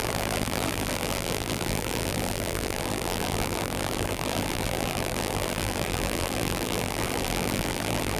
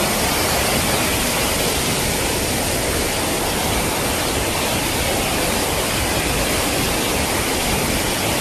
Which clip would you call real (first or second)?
second